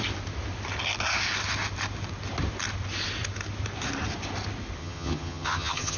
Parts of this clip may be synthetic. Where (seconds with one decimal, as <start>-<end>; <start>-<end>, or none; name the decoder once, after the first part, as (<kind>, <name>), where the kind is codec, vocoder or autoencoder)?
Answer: 4.8-6.0 (vocoder, HiFi-GAN)